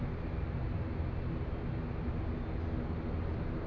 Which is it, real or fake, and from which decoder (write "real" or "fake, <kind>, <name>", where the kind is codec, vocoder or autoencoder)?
real